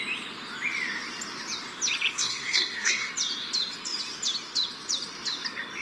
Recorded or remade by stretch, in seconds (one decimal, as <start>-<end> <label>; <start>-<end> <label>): 0.0-2.1 recorded; 2.1-3.1 remade; 3.1-5.8 recorded